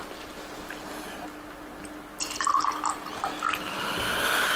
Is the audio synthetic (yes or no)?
no